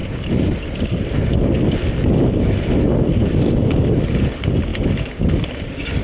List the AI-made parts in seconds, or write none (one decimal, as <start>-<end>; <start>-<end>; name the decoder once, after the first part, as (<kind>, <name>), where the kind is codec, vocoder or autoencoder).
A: none